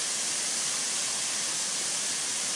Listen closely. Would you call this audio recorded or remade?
recorded